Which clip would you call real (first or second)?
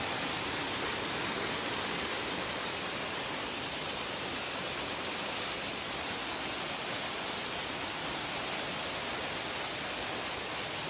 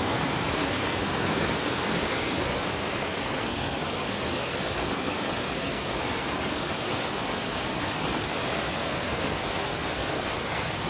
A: first